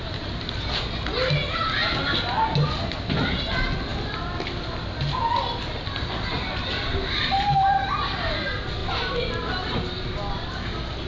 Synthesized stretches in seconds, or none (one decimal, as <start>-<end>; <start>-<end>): none